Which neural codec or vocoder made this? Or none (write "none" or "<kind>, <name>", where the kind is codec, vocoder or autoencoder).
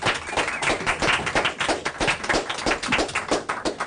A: none